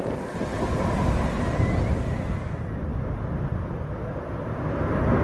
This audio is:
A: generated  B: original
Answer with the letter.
B